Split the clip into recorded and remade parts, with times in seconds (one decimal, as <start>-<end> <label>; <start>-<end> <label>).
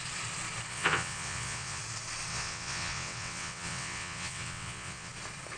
0.0-0.7 recorded; 0.7-1.8 remade; 1.8-2.3 recorded; 2.3-5.1 remade; 5.1-5.6 recorded